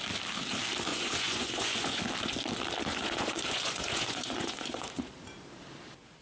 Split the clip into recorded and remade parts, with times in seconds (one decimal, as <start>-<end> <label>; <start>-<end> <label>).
0.0-0.9 recorded; 0.9-2.0 remade; 2.0-2.9 recorded; 2.9-5.1 remade; 5.1-6.2 recorded